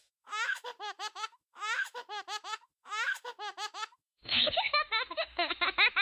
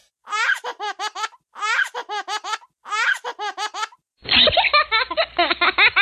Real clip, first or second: second